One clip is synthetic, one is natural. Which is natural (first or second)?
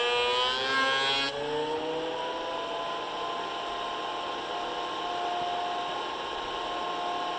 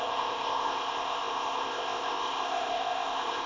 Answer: first